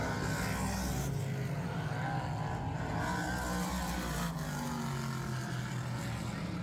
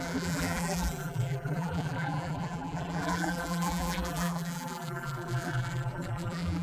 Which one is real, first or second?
first